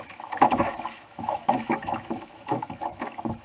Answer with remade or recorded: remade